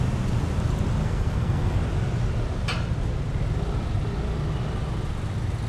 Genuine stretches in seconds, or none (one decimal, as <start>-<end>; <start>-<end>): 0.0-1.0; 1.8-5.7